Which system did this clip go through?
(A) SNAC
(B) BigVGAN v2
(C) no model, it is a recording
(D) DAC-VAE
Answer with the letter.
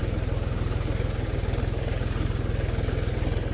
C